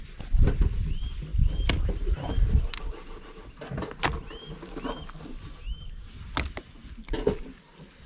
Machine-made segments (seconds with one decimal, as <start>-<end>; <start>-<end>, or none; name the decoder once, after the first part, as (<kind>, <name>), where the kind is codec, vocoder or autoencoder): none